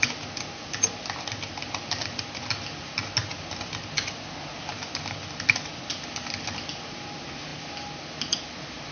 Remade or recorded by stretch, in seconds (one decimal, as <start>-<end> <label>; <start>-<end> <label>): 0.0-8.9 recorded